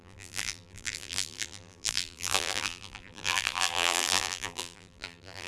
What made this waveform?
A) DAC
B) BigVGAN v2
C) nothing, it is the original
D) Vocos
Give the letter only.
B